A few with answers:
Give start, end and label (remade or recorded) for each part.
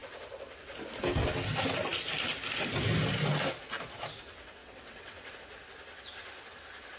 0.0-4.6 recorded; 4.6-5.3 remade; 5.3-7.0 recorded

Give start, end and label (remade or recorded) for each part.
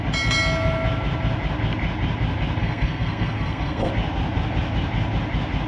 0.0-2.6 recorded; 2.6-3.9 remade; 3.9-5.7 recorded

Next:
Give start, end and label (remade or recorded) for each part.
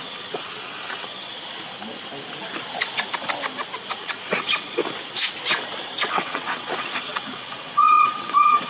0.0-1.3 remade; 1.3-4.0 recorded; 4.0-4.8 remade; 4.8-6.1 recorded; 6.1-8.7 remade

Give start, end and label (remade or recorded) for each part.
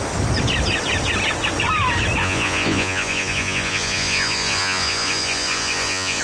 0.0-2.2 recorded; 2.2-6.2 remade